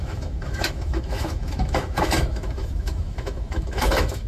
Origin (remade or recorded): remade